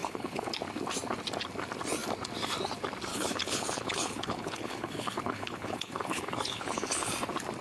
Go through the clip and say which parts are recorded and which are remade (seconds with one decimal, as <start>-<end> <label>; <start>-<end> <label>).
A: 0.0-0.5 remade; 0.5-3.1 recorded; 3.1-7.1 remade; 7.1-7.6 recorded